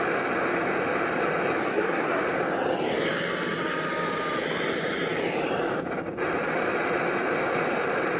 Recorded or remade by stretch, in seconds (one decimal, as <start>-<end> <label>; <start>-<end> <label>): 0.0-1.6 recorded; 1.6-2.2 remade; 2.2-8.2 recorded